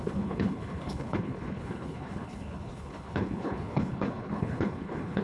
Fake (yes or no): yes